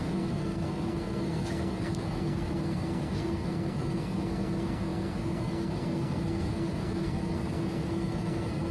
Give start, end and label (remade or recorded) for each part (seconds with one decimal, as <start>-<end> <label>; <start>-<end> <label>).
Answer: 0.0-8.7 remade